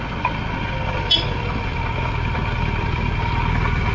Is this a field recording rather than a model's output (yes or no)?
yes